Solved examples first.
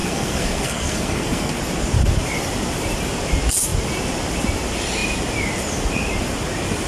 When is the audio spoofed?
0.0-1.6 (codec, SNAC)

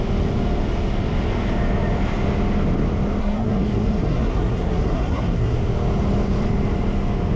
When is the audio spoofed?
3.2-5.6 (codec, SNAC)

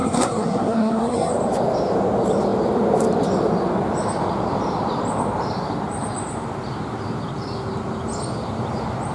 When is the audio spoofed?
0.0-1.3 (codec, SNAC)

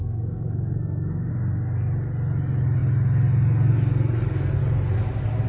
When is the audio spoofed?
0.0-1.3 (codec, SNAC)

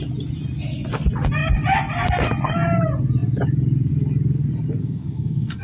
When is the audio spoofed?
4.8-5.6 (codec, SNAC)